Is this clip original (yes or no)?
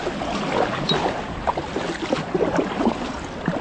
yes